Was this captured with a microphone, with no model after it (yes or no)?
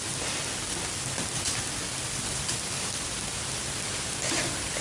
yes